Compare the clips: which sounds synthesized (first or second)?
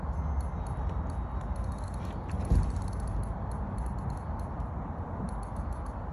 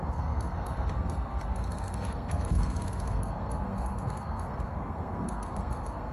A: second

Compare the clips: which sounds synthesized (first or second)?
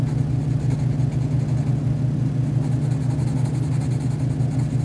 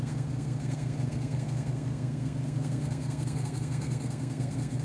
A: second